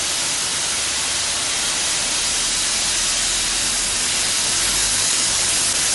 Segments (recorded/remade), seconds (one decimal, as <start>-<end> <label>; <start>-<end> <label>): 0.0-4.6 recorded; 4.6-5.5 remade; 5.5-5.9 recorded